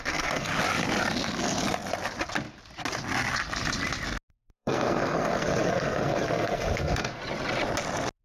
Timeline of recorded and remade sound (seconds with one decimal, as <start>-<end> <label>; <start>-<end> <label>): 0.0-0.5 remade; 0.5-4.3 recorded; 4.3-7.2 remade; 7.2-8.2 recorded